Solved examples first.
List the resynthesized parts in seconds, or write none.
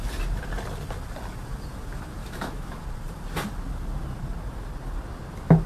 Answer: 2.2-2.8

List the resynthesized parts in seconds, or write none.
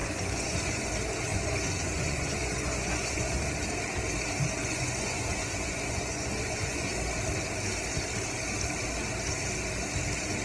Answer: 0.0-0.9; 1.3-3.4; 4.6-6.9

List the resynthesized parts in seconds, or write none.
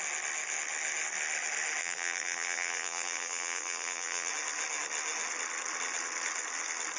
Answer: 1.8-4.3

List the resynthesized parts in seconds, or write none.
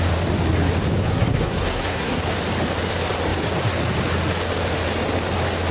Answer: 1.1-2.2